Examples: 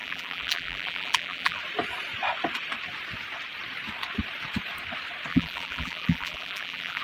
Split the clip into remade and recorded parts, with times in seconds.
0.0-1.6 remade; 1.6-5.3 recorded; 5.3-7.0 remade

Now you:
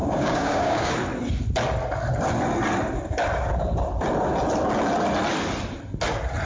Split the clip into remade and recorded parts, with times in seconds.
0.0-0.9 remade; 0.9-6.5 recorded